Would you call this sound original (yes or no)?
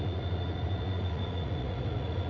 no